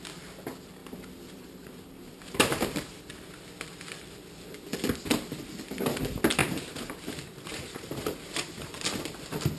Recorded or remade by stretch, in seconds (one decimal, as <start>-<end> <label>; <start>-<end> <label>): 0.0-0.8 recorded; 0.8-3.0 remade; 3.0-6.4 recorded; 6.4-8.6 remade; 8.6-9.6 recorded